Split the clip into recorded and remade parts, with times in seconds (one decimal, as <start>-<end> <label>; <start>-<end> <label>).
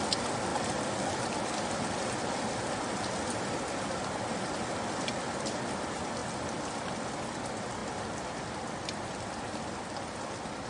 0.0-0.5 recorded; 0.5-1.5 remade; 1.5-10.7 recorded